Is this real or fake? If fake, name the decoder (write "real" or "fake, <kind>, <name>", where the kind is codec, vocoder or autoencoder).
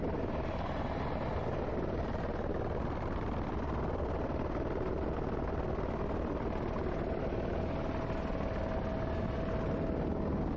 real